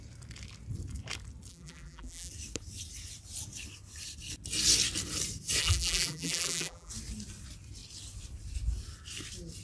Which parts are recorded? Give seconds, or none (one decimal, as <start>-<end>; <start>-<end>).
0.0-1.5; 2.3-5.6; 6.9-9.6